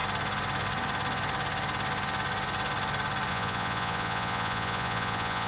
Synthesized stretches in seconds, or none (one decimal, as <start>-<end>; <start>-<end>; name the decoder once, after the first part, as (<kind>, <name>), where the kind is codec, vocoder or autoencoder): 3.3-5.5 (vocoder, Vocos)